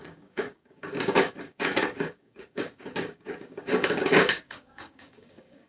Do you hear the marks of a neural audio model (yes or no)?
yes